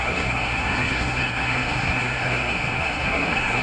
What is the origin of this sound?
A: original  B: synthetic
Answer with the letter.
B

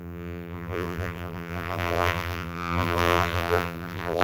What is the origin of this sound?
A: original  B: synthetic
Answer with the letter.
B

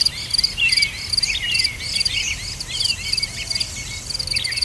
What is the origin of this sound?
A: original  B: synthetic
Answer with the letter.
A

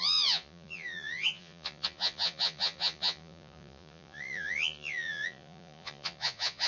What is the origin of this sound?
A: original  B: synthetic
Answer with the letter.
B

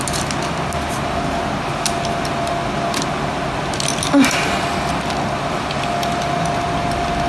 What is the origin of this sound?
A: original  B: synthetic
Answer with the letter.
A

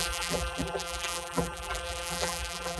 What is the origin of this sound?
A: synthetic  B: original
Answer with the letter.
A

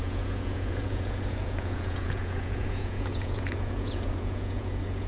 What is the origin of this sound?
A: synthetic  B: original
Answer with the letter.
A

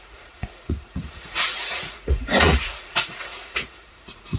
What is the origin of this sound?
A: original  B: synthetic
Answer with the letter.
B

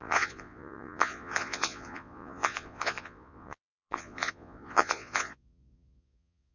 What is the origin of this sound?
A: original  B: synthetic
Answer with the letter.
B